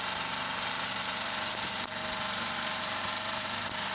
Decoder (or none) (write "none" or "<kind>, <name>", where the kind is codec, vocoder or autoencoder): vocoder, BigVGAN v2